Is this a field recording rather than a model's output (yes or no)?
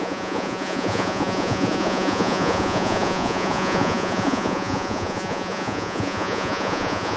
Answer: no